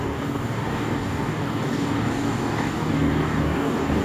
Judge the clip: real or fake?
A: fake